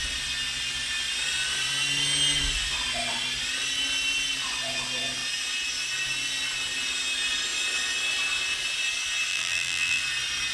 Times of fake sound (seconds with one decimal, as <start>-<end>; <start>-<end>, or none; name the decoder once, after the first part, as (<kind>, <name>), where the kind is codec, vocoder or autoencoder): 9.3-10.0 (vocoder, BigVGAN v2)